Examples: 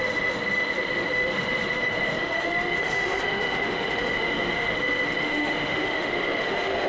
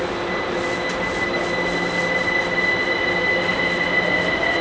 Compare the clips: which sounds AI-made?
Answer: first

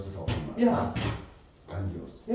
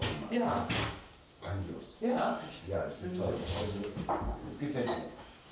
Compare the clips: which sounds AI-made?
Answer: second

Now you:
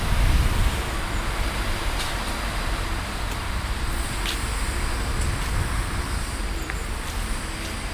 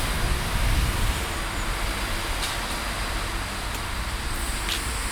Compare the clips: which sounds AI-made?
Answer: first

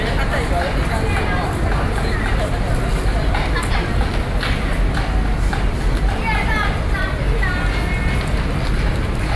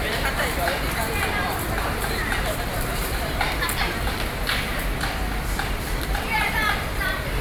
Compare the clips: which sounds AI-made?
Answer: second